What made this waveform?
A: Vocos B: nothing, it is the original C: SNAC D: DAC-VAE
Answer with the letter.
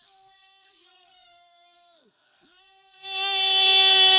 C